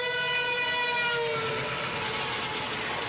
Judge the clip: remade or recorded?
recorded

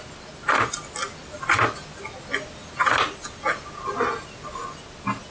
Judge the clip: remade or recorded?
recorded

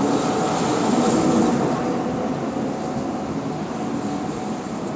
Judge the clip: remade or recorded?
recorded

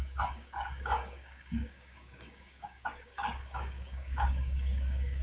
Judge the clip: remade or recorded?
remade